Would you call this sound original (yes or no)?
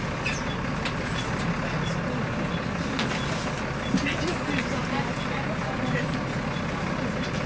yes